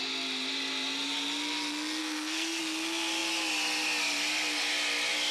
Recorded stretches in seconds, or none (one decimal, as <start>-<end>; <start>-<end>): 0.0-2.0; 2.6-5.3